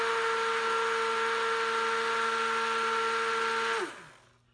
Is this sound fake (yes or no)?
no